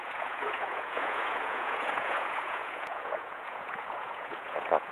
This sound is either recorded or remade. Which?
remade